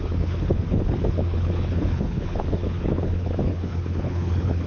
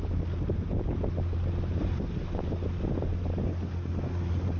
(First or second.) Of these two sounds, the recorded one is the second